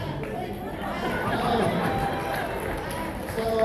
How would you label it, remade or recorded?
recorded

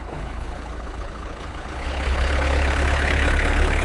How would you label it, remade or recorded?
remade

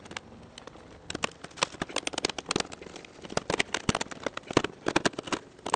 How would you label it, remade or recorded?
recorded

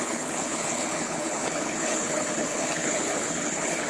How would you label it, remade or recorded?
remade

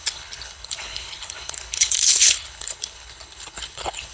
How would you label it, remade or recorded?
remade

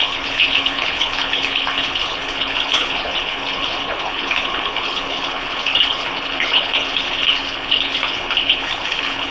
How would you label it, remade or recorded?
remade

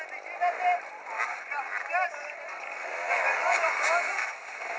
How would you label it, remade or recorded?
recorded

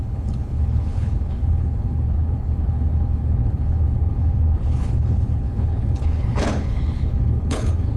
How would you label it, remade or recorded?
remade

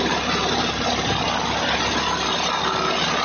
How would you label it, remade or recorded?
recorded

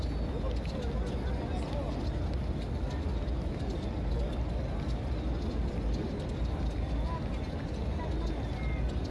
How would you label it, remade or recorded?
recorded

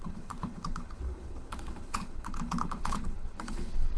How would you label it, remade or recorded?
remade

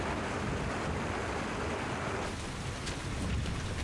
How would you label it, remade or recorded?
recorded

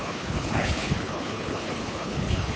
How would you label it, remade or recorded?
remade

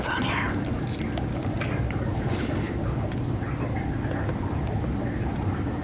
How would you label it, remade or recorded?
recorded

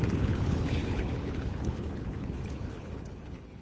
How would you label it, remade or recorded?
remade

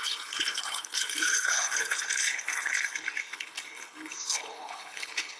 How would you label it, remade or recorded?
remade